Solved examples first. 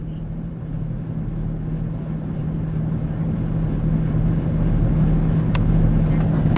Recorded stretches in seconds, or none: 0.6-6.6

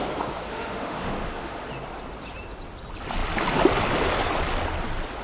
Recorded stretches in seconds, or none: 0.0-0.5; 1.7-5.2

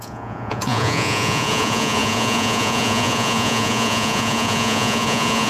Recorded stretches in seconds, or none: none

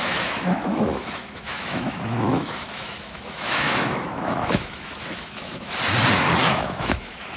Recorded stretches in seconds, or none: 5.5-6.5